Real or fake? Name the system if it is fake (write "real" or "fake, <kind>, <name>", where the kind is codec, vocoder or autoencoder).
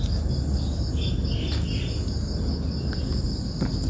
real